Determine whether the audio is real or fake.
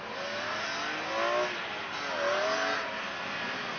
real